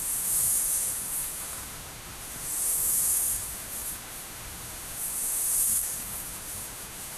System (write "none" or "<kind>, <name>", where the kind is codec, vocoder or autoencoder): autoencoder, DAC-VAE